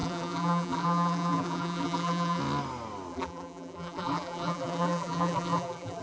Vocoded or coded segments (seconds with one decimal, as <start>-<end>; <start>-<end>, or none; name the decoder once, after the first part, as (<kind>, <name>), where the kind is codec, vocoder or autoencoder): 0.0-2.4 (vocoder, BigVGAN v2); 3.1-6.0